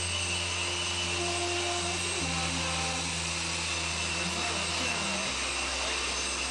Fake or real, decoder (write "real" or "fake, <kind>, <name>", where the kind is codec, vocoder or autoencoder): real